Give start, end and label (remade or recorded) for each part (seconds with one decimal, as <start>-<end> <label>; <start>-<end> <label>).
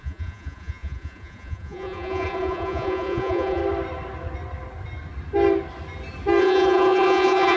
0.0-3.6 remade; 3.6-6.4 recorded; 6.4-7.6 remade